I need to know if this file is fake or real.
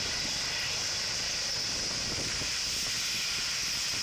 fake